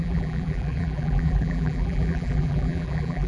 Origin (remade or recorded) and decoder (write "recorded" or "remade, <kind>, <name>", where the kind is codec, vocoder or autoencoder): remade, vocoder, BigVGAN v2